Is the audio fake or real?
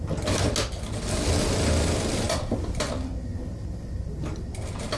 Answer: real